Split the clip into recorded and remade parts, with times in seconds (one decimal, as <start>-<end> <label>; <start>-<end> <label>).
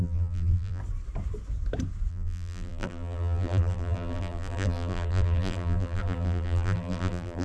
0.0-0.8 remade; 0.8-2.1 recorded; 2.1-7.4 remade